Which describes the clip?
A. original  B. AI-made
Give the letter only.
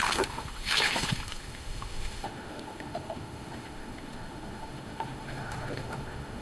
B